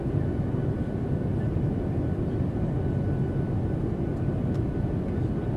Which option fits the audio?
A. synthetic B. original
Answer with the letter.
B